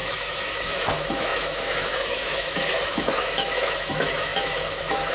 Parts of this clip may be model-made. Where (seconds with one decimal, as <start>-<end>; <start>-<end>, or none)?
0.0-5.1